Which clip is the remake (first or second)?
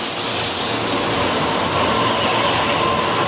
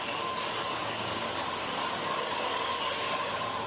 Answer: second